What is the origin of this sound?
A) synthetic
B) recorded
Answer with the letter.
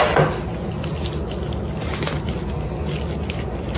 B